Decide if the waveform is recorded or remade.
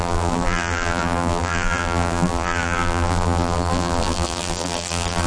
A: remade